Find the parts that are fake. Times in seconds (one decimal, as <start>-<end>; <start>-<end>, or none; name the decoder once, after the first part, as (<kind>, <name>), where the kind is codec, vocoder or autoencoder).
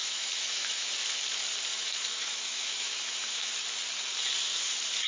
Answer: 0.0-0.9 (autoencoder, DAC-VAE); 1.7-3.5